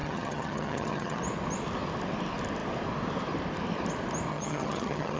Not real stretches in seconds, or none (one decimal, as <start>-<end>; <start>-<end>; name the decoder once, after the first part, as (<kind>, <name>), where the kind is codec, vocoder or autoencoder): 0.0-1.2 (vocoder, HiFi-GAN); 4.3-5.2